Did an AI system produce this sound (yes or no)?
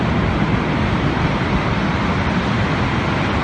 no